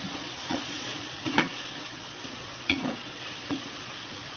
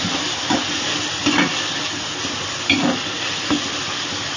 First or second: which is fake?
first